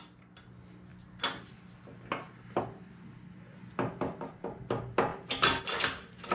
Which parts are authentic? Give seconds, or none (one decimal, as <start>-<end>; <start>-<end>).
0.0-6.3